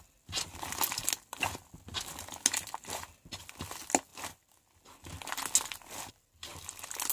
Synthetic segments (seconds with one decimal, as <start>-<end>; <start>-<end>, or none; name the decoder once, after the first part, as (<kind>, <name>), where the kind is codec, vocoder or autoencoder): none